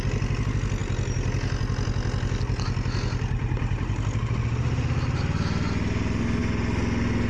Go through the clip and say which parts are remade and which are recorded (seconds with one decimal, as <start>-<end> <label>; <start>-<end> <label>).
0.0-7.3 recorded